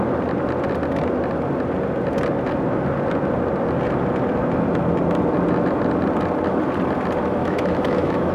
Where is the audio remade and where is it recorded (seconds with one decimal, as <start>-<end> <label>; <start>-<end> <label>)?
0.0-7.4 recorded; 7.4-8.3 remade